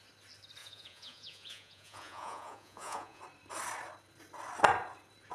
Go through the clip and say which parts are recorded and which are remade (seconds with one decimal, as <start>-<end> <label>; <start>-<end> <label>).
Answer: 0.0-0.6 recorded; 0.6-3.2 remade; 3.2-5.3 recorded